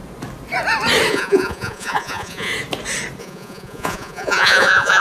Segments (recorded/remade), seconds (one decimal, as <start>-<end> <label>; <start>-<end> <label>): 0.0-1.1 recorded; 1.1-2.5 remade; 2.5-3.2 recorded; 3.2-5.0 remade